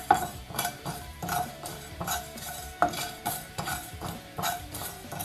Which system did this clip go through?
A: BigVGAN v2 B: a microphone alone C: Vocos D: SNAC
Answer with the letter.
A